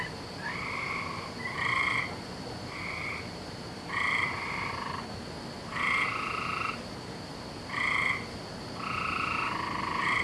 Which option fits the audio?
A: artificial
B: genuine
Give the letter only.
A